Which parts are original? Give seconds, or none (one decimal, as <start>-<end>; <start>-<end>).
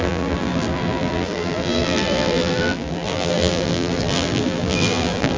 none